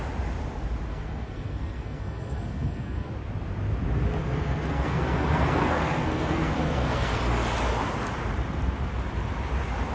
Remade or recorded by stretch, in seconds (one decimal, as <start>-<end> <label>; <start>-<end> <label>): 0.0-0.9 recorded; 0.9-3.1 remade; 3.1-4.2 recorded; 4.2-7.2 remade; 7.2-9.9 recorded